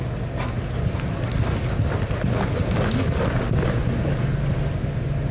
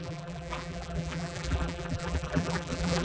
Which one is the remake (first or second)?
second